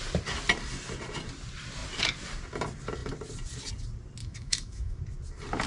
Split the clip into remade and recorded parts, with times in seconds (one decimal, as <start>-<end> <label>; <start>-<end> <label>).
0.0-4.2 recorded; 4.2-5.0 remade; 5.0-5.7 recorded